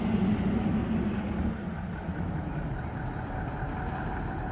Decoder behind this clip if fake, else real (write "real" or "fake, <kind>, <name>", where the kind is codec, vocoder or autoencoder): real